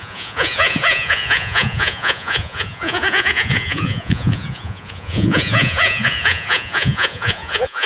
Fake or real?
fake